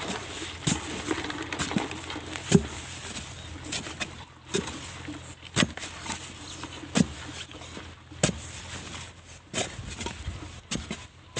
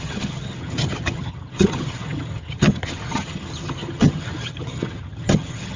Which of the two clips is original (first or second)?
first